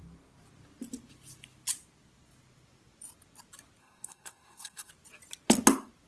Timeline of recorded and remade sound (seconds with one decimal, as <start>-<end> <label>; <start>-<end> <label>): 0.0-3.8 recorded; 3.8-4.9 remade; 4.9-6.1 recorded